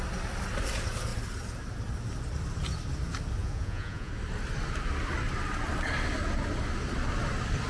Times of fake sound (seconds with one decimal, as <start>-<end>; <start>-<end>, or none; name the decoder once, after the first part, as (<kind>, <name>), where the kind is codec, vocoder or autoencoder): 3.4-4.1 (vocoder, Vocos)

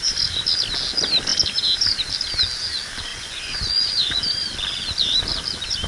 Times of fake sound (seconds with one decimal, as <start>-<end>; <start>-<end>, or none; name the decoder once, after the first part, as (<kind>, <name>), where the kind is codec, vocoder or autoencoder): 3.1-4.2 (vocoder, Vocos)